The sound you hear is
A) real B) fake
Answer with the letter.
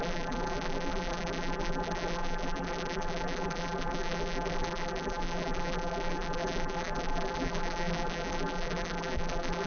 B